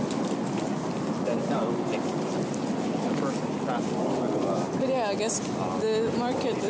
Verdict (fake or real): real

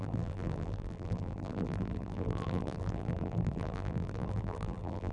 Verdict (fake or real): fake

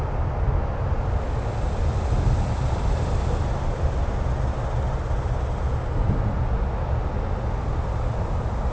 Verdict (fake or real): real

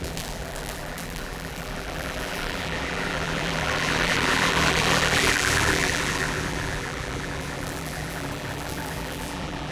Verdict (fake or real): fake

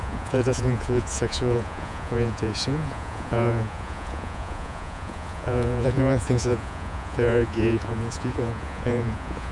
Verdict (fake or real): fake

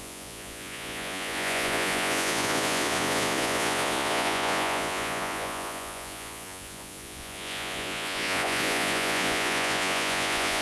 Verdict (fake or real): fake